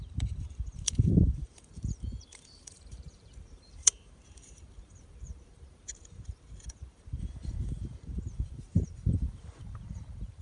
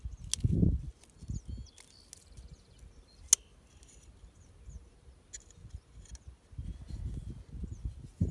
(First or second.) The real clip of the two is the second